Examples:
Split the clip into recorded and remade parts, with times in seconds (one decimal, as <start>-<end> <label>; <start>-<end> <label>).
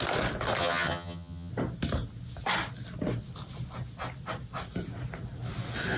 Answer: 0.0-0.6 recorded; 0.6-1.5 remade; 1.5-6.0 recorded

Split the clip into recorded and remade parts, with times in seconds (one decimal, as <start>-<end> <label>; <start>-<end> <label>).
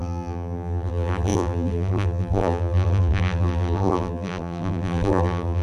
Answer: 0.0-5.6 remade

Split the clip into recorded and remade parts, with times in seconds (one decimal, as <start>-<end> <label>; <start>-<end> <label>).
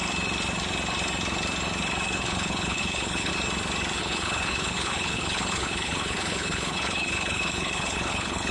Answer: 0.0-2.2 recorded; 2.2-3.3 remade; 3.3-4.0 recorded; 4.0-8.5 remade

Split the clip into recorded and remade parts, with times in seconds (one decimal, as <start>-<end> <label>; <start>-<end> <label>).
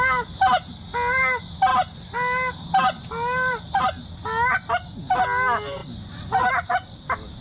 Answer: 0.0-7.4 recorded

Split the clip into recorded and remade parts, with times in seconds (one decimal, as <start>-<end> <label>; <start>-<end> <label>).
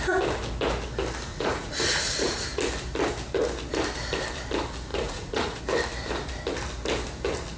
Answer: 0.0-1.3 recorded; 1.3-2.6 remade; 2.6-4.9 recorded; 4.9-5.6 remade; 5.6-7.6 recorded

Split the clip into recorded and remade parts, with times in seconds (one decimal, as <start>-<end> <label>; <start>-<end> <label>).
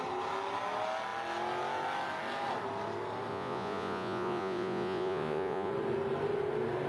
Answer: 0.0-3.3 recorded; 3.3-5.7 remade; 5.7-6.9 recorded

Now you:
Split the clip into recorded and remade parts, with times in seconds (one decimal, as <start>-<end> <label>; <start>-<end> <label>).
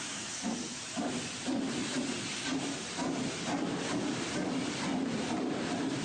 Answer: 0.0-1.8 remade; 1.8-2.6 recorded; 2.6-6.0 remade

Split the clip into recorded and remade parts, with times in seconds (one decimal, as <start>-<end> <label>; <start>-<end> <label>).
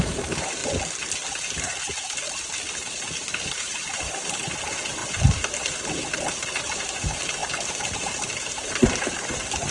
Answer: 0.0-0.6 remade; 0.6-1.3 recorded; 1.3-9.7 remade